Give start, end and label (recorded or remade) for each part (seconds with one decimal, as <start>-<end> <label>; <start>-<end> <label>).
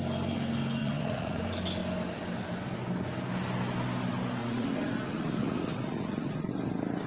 0.0-0.8 recorded; 0.8-1.4 remade; 1.4-4.4 recorded; 4.4-6.5 remade; 6.5-7.1 recorded